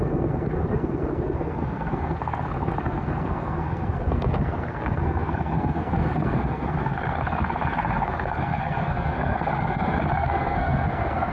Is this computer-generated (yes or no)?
yes